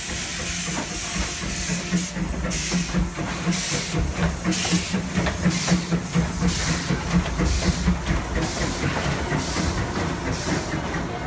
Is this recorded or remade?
recorded